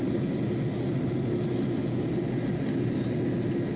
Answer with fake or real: real